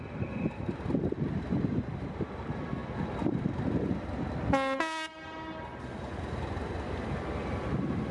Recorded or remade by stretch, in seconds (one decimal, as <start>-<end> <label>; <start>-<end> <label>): 0.0-8.1 recorded